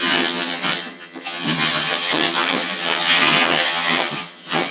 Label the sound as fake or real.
fake